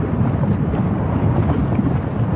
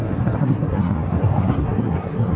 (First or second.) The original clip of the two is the first